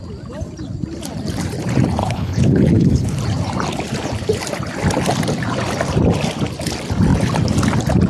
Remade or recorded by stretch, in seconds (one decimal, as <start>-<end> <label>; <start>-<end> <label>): 0.0-2.0 recorded; 2.0-3.2 remade; 3.2-8.1 recorded